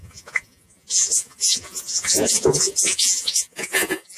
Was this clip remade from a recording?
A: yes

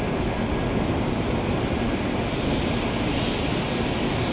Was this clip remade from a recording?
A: no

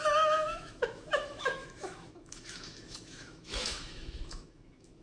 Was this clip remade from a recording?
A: yes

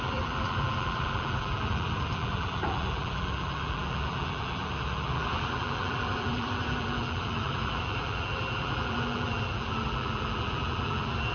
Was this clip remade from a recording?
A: yes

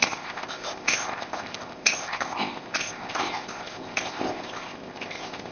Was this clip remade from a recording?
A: yes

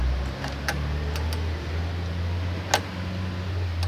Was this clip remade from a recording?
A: no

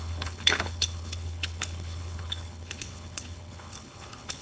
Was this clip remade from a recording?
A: yes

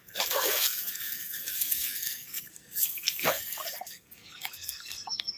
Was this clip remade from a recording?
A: yes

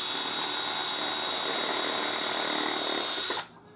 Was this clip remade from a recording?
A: no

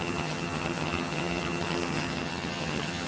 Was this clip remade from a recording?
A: yes